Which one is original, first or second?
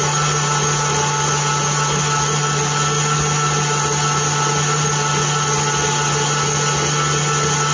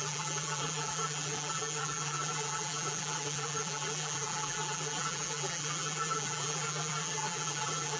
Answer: first